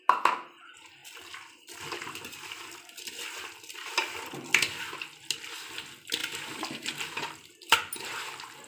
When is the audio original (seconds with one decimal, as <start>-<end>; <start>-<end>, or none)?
0.0-8.7